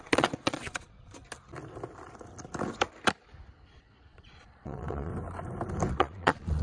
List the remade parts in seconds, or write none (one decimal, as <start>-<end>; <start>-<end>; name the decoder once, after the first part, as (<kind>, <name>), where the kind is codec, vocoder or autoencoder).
0.0-1.2 (vocoder, Vocos); 3.7-5.1; 5.9-6.6